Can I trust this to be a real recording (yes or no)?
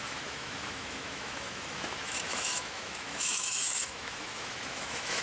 no